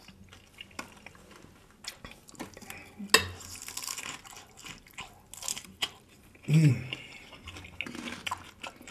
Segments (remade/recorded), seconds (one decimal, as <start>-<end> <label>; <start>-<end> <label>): 0.0-5.5 recorded; 5.5-6.7 remade; 6.7-8.9 recorded